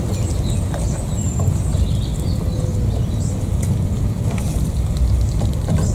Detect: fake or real real